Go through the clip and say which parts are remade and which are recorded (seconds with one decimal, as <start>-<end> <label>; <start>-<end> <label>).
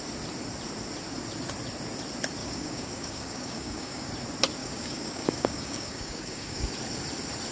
0.0-2.4 recorded; 2.4-4.1 remade; 4.1-4.6 recorded; 4.6-6.7 remade; 6.7-7.5 recorded